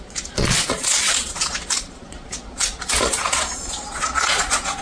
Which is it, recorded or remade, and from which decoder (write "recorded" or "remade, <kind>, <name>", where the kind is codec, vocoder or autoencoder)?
remade, vocoder, Vocos